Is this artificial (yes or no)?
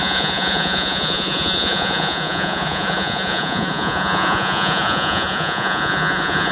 yes